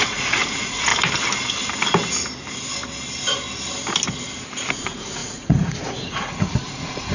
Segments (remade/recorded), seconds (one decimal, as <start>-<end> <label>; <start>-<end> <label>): 0.0-0.9 remade; 0.9-4.7 recorded; 4.7-7.1 remade